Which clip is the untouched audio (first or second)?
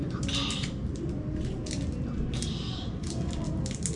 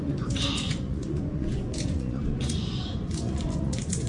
first